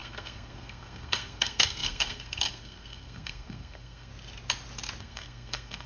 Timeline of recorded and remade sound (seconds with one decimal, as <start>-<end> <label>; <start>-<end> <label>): 0.0-4.1 remade; 4.1-5.0 recorded; 5.0-5.9 remade